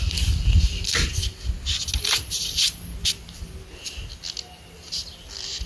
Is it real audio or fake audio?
real